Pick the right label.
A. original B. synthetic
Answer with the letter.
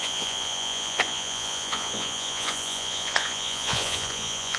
B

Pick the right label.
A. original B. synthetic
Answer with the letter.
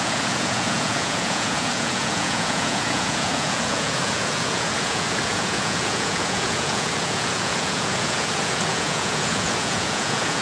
B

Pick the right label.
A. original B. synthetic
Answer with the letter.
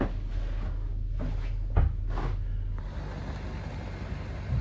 A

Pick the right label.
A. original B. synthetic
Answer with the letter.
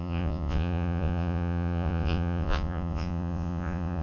B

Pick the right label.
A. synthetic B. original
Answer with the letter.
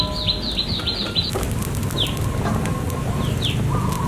B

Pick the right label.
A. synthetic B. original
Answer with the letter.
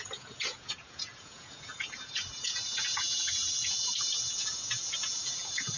A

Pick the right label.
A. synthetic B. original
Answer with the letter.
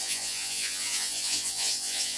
A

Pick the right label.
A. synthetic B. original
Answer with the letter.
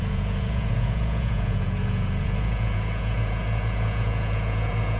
A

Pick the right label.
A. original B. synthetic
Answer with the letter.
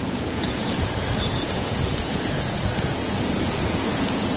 B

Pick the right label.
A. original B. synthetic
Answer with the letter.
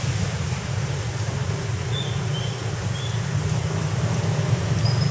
A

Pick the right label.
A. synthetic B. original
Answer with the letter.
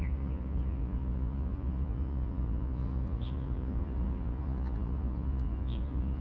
A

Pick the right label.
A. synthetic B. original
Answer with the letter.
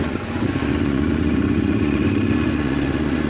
A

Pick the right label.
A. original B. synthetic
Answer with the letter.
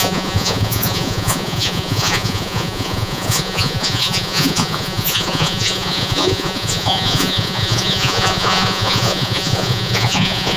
B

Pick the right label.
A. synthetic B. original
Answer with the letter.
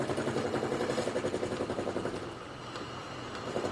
B